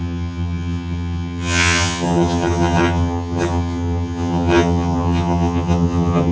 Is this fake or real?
fake